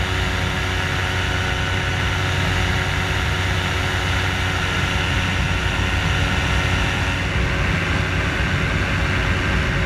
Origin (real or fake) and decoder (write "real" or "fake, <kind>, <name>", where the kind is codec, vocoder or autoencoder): real